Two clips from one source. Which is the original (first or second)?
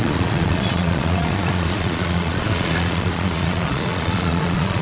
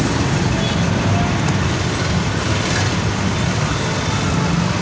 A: second